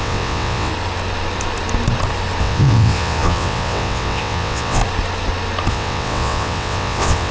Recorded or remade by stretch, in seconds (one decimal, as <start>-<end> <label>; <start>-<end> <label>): 0.0-0.7 remade; 0.7-2.4 recorded; 2.4-4.8 remade; 4.8-5.7 recorded; 5.7-7.3 remade